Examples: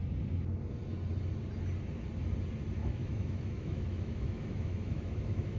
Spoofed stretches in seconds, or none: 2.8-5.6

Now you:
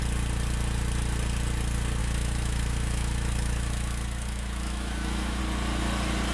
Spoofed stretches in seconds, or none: 2.0-5.4

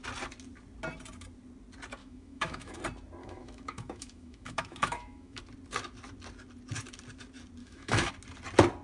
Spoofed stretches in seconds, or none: 2.0-2.8; 3.2-5.4; 7.6-8.1